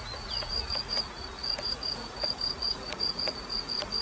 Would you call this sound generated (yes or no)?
yes